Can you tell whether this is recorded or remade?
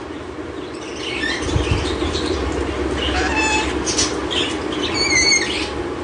recorded